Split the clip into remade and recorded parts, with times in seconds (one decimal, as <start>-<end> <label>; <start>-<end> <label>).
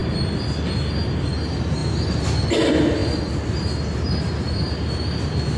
0.0-5.6 recorded